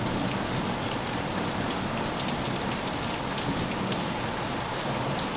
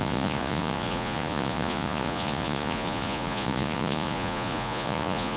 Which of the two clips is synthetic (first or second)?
second